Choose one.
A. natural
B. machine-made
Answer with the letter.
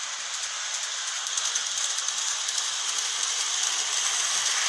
B